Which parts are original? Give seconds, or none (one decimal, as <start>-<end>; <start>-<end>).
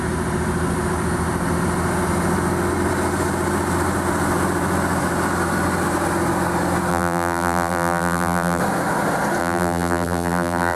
0.0-6.9; 8.6-9.4